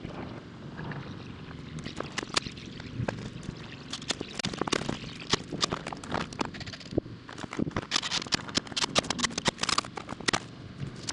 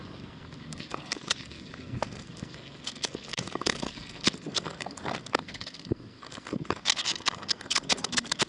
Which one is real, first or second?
first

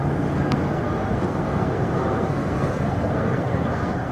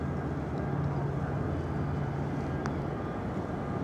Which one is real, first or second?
second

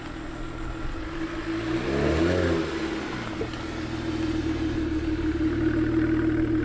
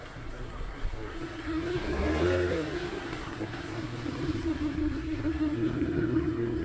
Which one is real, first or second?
first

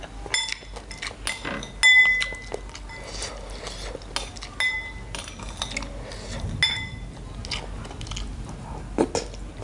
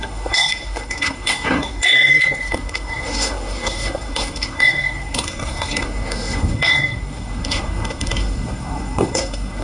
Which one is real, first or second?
first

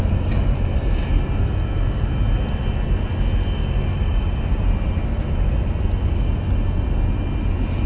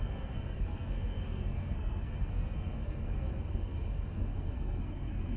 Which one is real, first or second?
first